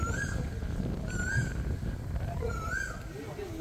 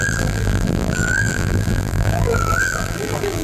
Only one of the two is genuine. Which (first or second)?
first